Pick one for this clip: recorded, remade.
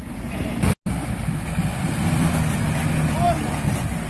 recorded